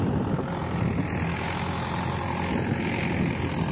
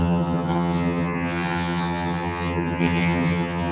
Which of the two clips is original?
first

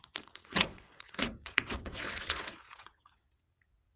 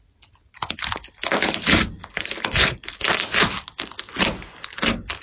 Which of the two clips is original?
second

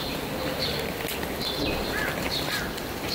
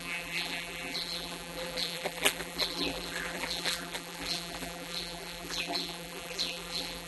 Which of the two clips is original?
first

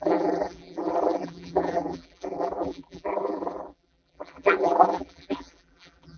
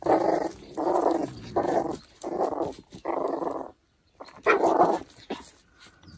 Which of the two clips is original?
second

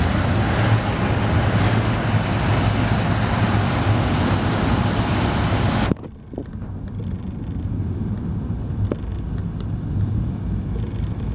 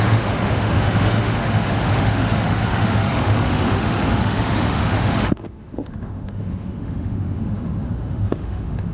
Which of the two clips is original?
first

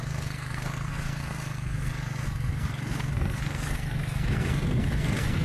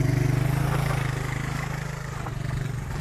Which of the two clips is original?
second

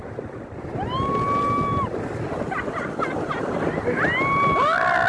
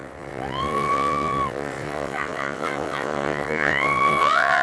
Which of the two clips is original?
first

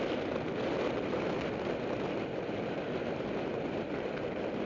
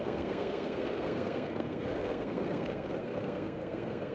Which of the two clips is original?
first